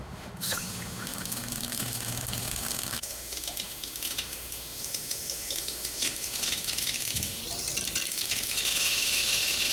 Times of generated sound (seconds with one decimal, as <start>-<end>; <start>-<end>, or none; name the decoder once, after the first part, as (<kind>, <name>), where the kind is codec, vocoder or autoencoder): 0.0-7.4 (autoencoder, DAC-VAE); 8.1-9.7